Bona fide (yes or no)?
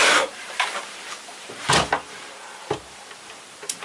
no